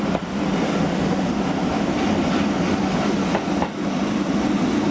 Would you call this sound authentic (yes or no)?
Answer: yes